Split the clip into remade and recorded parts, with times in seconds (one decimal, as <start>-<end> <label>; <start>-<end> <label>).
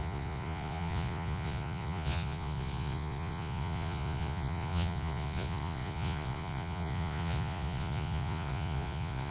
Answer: 0.0-9.3 remade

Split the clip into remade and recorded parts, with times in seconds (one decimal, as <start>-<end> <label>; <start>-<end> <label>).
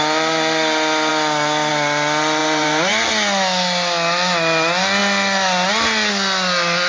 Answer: 0.0-2.4 recorded; 2.4-3.1 remade; 3.1-6.9 recorded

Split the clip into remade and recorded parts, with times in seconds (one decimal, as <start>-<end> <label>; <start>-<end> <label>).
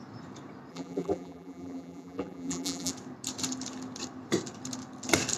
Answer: 0.0-0.7 recorded; 0.7-2.9 remade; 2.9-5.4 recorded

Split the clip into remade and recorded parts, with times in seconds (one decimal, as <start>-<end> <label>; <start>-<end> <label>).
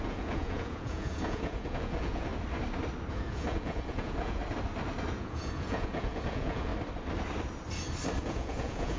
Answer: 0.0-2.3 remade; 2.3-3.1 recorded; 3.1-4.4 remade; 4.4-5.1 recorded; 5.1-6.7 remade; 6.7-8.2 recorded; 8.2-9.0 remade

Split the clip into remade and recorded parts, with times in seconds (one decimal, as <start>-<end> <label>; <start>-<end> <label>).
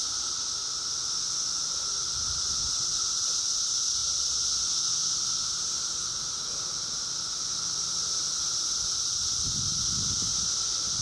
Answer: 0.0-11.0 recorded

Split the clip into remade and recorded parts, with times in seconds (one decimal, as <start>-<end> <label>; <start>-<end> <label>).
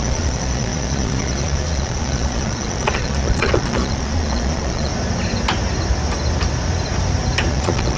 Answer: 0.0-4.9 remade; 4.9-7.5 recorded; 7.5-8.0 remade